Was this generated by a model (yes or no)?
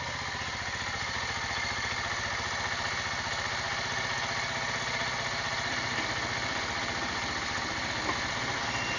no